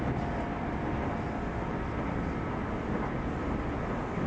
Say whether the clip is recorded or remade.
recorded